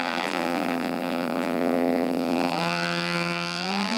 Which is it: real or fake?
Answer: fake